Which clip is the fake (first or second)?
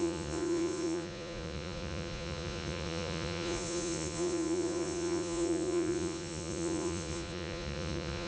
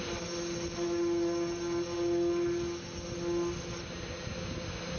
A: first